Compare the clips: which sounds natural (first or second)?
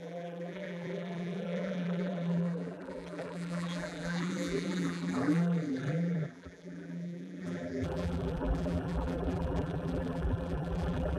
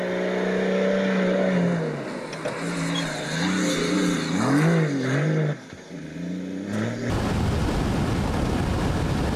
second